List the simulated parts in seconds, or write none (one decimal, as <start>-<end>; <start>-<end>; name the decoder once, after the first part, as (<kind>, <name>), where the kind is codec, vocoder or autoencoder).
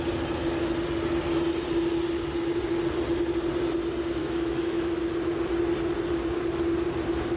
4.2-5.0 (autoencoder, DAC-VAE)